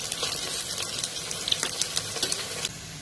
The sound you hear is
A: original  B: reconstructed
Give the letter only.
A